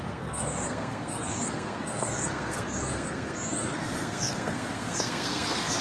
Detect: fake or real fake